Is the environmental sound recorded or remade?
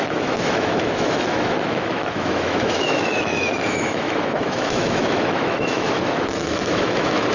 remade